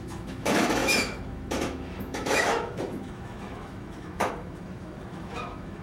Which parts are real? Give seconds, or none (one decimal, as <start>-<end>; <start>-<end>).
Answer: none